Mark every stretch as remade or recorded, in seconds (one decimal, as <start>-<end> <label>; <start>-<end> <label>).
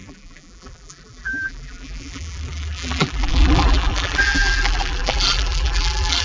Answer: 0.0-6.2 remade